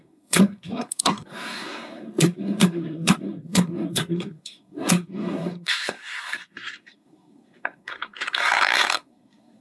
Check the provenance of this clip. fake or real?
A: fake